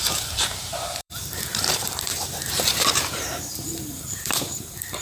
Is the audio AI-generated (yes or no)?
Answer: yes